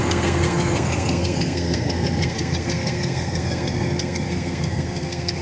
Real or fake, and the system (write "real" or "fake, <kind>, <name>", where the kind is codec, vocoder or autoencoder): fake, codec, SNAC